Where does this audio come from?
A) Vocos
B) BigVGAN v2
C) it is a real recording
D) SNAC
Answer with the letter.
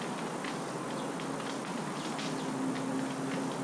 C